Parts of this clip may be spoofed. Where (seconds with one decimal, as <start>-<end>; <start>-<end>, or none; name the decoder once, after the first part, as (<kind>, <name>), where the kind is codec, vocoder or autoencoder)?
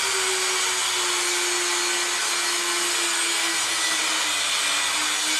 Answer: none